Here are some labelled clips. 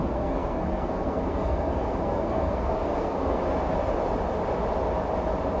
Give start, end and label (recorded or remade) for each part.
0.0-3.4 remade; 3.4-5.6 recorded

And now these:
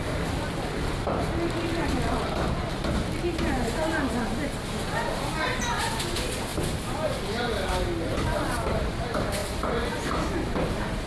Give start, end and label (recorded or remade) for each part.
0.0-11.1 recorded

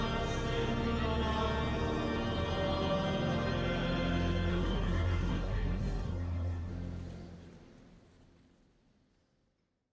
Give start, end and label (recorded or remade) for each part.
0.0-4.5 recorded; 4.5-6.7 remade; 6.7-9.9 recorded